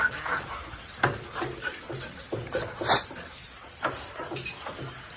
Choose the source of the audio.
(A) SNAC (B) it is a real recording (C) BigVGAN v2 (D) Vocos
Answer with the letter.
B